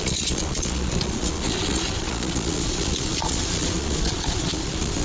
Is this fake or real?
fake